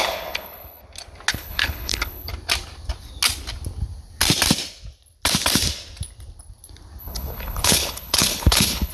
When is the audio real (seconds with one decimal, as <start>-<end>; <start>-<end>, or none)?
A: 0.8-1.3; 2.3-7.0